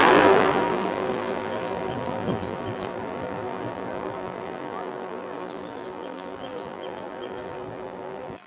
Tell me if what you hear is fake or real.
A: fake